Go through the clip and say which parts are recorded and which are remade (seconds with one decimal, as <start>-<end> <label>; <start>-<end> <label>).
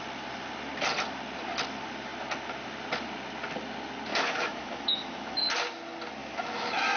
0.0-4.1 recorded; 4.1-5.4 remade; 5.4-6.2 recorded; 6.2-7.0 remade